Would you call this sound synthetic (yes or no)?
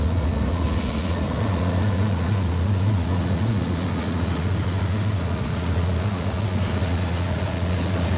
yes